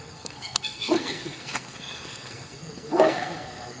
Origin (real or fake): fake